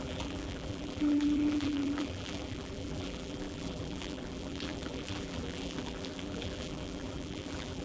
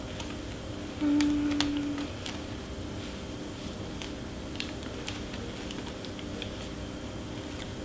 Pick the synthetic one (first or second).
first